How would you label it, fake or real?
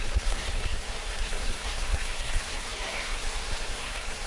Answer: fake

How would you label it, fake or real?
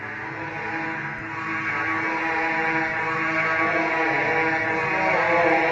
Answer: real